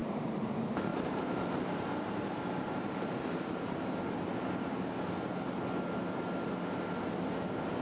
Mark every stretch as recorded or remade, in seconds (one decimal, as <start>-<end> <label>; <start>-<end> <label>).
0.0-0.5 remade; 0.5-0.9 recorded; 0.9-3.9 remade; 3.9-7.8 recorded